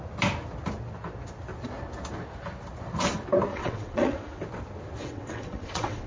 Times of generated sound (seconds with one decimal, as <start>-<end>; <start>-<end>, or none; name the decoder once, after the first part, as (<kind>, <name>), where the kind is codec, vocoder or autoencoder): 3.5-4.4 (vocoder, WaveNeXt); 5.0-6.1